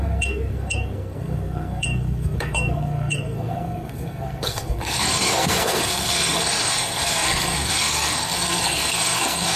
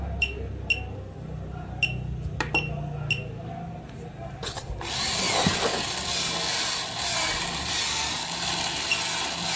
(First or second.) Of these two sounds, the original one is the second